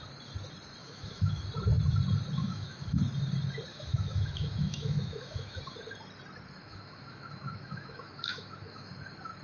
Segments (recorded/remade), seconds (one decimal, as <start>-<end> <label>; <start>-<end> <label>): 0.0-0.8 recorded; 0.8-1.4 remade; 1.4-2.4 recorded; 2.4-3.0 remade; 3.0-3.7 recorded; 3.7-5.6 remade; 5.6-6.6 recorded; 6.6-8.9 remade; 8.9-9.4 recorded